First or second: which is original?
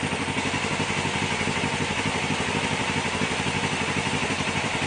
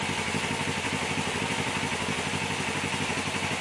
second